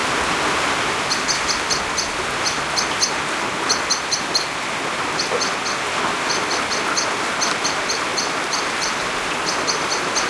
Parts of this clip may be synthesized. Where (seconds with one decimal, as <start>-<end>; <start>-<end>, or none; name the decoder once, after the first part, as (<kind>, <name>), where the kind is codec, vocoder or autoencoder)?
8.1-9.1 (vocoder, BigVGAN v2)